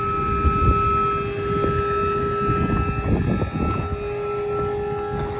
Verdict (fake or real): real